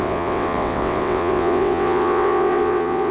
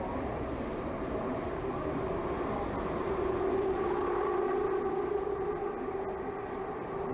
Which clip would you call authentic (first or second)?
second